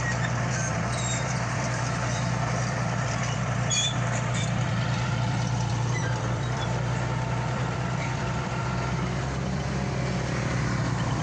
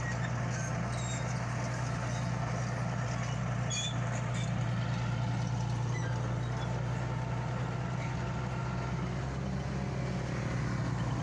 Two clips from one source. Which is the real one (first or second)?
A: second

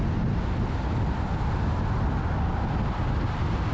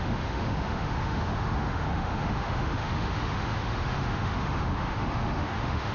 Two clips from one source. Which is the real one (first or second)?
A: first